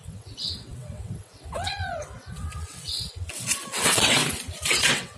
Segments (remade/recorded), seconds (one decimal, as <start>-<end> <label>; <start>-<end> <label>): 0.0-4.2 remade; 4.2-4.7 recorded; 4.7-5.2 remade